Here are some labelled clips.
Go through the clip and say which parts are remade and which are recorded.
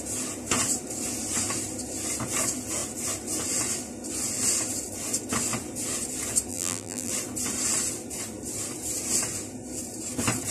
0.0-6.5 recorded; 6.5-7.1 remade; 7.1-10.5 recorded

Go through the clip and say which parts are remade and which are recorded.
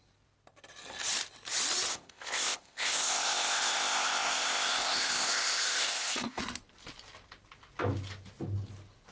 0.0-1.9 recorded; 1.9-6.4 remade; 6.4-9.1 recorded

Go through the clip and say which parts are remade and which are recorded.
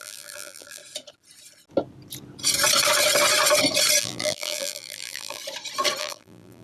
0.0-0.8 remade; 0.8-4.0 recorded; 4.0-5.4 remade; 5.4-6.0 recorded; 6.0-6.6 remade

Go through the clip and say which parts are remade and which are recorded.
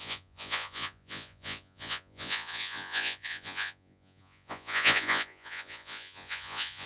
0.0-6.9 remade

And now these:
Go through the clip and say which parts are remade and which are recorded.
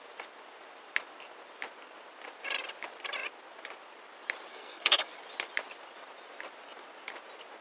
0.0-4.5 recorded; 4.5-5.1 remade; 5.1-7.6 recorded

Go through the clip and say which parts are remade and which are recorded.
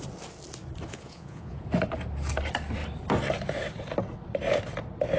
0.0-0.9 recorded; 0.9-1.7 remade; 1.7-5.2 recorded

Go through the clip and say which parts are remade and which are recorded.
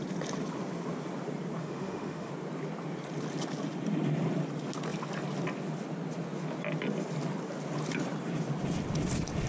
0.0-1.6 recorded; 1.6-2.3 remade; 2.3-9.5 recorded